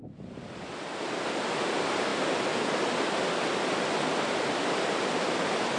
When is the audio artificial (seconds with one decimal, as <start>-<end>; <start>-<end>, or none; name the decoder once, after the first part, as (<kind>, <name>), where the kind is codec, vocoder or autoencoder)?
0.0-2.1 (vocoder, BigVGAN v2); 4.5-5.8